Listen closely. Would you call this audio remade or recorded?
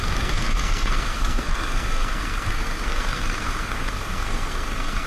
remade